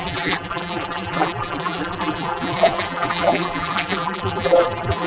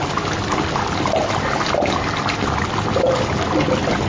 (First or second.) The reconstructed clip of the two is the first